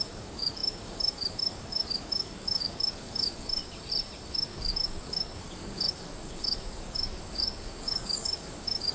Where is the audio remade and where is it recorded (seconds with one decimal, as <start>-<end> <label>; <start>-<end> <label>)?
0.0-3.6 remade; 3.6-4.3 recorded; 4.3-8.9 remade